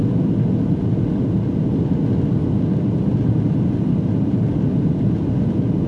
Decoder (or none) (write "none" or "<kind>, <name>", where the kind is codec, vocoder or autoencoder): none